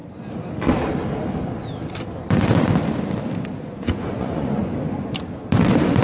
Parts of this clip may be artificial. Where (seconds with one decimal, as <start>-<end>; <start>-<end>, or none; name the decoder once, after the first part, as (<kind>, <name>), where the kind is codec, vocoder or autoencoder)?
3.6-4.6 (vocoder, Vocos); 5.5-6.0